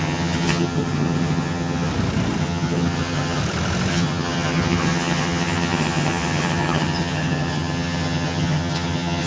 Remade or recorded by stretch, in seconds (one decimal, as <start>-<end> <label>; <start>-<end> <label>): 0.0-1.9 remade; 1.9-2.4 recorded; 2.4-3.4 remade; 3.4-3.9 recorded; 3.9-9.3 remade